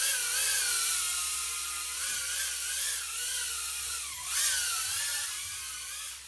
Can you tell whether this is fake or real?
real